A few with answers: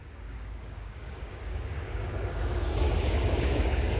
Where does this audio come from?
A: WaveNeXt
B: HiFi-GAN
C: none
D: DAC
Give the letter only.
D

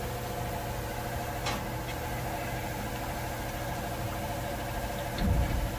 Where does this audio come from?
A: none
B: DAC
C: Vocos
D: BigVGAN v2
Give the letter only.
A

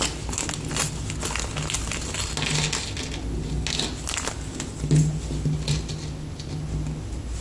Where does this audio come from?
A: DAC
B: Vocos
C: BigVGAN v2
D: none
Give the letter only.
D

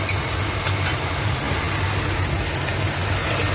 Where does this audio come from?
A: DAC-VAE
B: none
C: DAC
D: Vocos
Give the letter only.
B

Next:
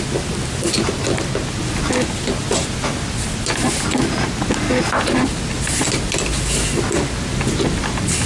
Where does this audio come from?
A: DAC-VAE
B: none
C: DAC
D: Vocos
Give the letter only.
B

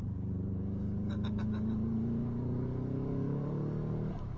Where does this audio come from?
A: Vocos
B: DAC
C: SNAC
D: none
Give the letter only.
B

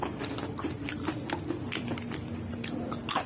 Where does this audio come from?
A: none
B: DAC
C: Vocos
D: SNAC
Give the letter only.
A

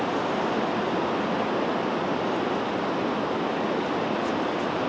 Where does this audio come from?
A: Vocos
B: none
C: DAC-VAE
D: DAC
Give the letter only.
B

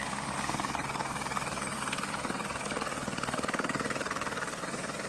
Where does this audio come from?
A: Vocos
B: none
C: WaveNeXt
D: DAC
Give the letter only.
D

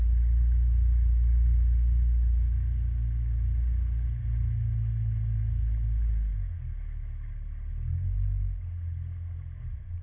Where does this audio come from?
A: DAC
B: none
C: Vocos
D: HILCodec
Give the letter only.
B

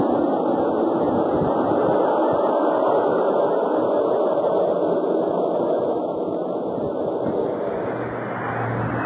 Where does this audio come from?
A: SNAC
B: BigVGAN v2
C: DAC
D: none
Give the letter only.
D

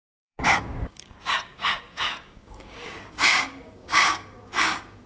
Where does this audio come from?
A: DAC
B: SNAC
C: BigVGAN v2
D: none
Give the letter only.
A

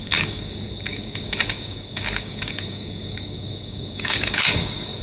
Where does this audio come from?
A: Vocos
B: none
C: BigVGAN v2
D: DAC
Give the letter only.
D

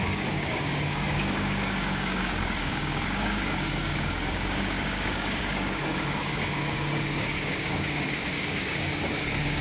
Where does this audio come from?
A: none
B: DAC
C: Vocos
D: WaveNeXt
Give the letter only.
B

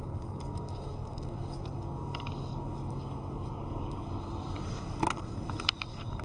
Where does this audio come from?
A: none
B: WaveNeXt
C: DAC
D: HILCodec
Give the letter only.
C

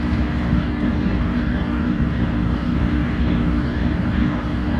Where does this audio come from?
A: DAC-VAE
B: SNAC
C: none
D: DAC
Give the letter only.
D